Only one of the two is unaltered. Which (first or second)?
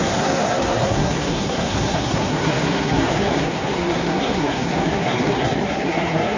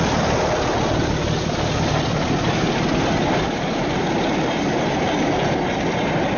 second